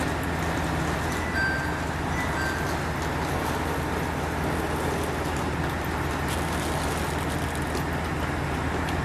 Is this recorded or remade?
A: recorded